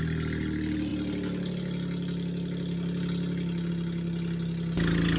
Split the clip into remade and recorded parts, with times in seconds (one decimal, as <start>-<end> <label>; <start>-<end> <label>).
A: 0.0-5.2 recorded